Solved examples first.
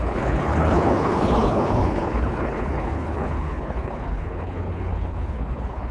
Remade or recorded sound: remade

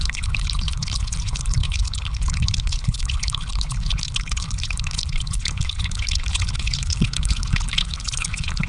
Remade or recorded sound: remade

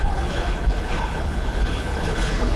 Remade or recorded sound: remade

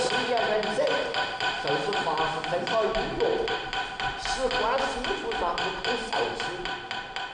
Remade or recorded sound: recorded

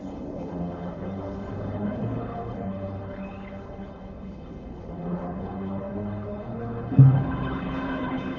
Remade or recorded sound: remade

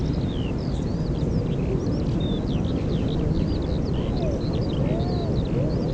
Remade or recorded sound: recorded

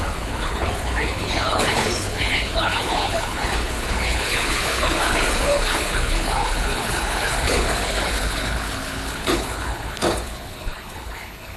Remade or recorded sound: remade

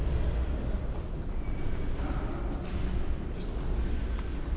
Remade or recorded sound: recorded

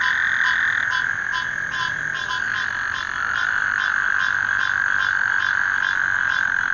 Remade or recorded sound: recorded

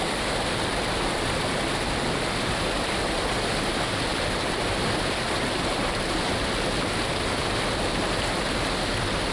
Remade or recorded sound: recorded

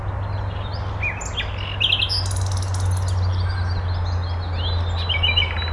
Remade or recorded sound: recorded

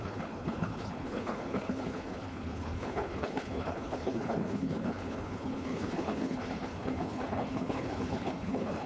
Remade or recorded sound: remade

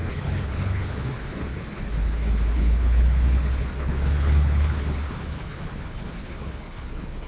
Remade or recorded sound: remade